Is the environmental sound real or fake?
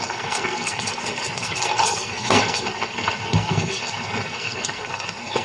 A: fake